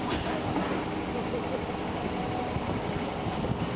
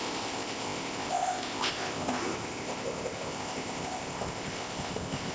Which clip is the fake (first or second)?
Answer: second